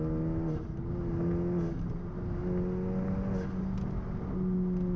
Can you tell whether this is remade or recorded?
recorded